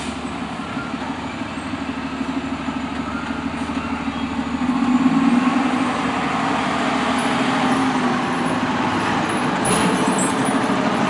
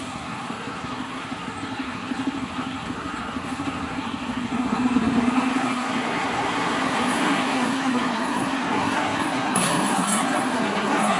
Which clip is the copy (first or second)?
second